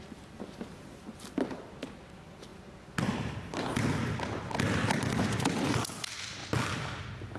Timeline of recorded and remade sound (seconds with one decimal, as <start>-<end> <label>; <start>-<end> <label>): 0.0-7.4 recorded